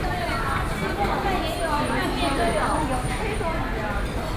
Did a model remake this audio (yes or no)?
no